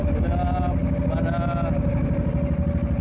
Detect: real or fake real